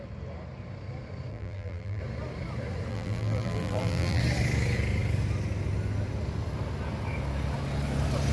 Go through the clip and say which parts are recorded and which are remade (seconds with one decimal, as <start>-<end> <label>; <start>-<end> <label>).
0.0-1.3 recorded; 1.3-2.0 remade; 2.0-2.9 recorded; 2.9-4.2 remade; 4.2-8.3 recorded